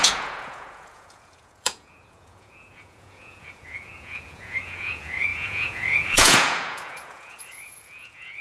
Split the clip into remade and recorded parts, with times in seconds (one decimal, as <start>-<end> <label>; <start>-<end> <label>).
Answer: 0.0-8.4 remade